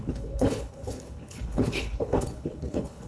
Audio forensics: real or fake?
fake